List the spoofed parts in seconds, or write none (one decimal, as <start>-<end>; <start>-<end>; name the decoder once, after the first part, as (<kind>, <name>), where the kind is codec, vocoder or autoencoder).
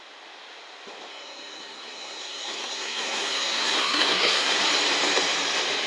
1.1-4.6 (codec, SNAC)